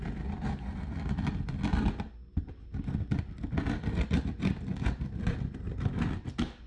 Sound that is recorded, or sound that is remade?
recorded